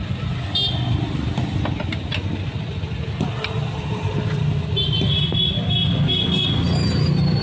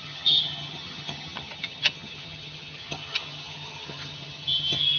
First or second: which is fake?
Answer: second